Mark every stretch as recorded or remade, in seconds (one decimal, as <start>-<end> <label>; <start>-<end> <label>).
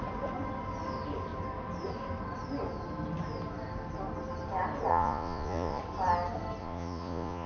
0.0-4.9 recorded; 4.9-5.8 remade; 5.8-6.6 recorded; 6.6-7.5 remade